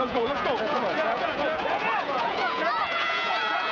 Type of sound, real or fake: fake